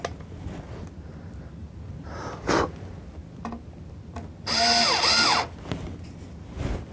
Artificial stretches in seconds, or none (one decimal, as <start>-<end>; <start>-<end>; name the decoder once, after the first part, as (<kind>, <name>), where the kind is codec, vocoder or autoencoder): none